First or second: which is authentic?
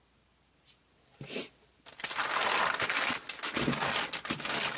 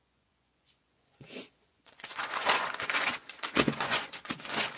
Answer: first